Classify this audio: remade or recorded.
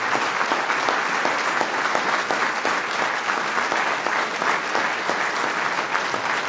recorded